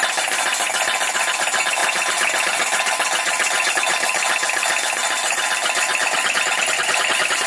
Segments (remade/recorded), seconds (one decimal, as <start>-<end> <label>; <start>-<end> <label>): 0.0-7.5 recorded

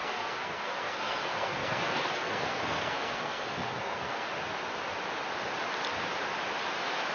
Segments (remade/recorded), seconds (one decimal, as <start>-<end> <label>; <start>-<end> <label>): 0.0-4.3 remade; 4.3-7.1 recorded

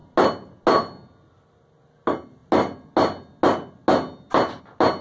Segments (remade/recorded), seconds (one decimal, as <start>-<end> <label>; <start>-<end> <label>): 0.0-5.0 recorded

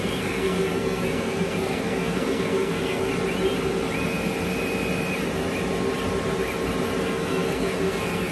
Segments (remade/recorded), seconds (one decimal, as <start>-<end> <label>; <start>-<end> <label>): 0.0-3.1 remade; 3.1-7.0 recorded; 7.0-8.3 remade

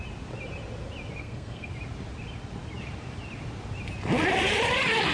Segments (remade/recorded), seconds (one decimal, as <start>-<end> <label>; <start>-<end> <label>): 0.0-1.2 recorded; 1.2-1.7 remade; 1.7-5.1 recorded